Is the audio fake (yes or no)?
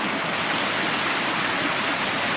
no